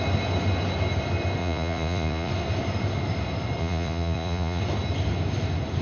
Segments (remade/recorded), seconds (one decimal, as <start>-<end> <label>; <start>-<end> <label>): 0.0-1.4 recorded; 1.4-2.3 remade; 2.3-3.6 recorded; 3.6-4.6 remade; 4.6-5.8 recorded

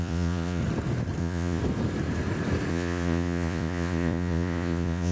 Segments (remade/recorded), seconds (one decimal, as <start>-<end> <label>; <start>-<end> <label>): 0.0-0.6 remade; 0.6-1.2 recorded; 1.2-1.6 remade; 1.6-2.7 recorded; 2.7-5.1 remade

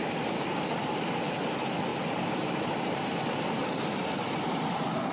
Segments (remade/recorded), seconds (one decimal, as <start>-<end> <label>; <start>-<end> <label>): 0.0-5.1 recorded

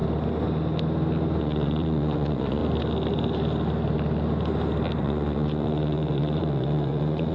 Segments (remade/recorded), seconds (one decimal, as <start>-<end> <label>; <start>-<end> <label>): 0.0-1.4 recorded; 1.4-2.6 remade; 2.6-5.0 recorded; 5.0-7.3 remade

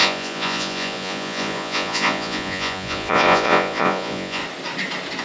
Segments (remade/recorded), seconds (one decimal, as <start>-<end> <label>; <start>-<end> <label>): 0.0-4.4 remade; 4.4-5.2 recorded